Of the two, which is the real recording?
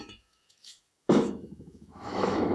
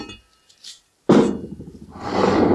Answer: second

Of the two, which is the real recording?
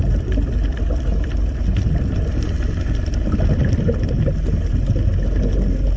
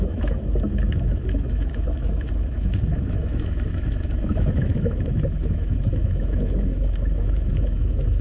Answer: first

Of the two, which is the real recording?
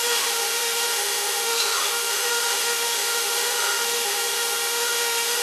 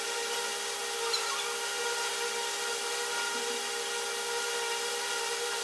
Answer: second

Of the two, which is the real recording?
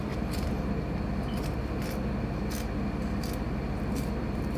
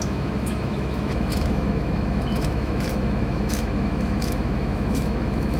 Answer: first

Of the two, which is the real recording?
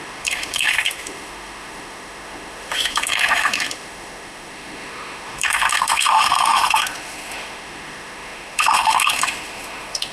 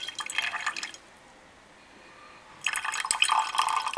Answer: second